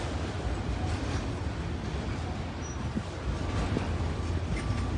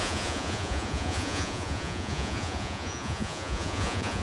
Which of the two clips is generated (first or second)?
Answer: second